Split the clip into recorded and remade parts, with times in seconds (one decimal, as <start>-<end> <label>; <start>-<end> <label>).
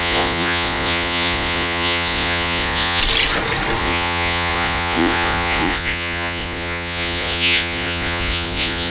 0.0-3.0 remade; 3.0-3.8 recorded; 3.8-8.9 remade